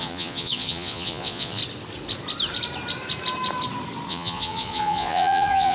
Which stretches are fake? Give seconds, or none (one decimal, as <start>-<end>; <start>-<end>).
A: 0.0-1.6; 4.1-5.7